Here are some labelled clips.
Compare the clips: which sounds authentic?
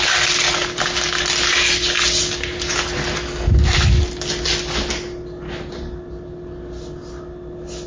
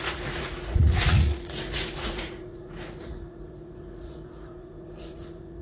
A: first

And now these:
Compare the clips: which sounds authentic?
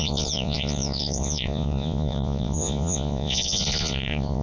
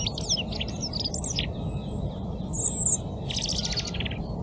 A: second